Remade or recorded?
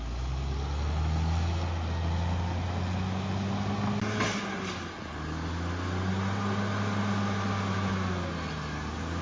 recorded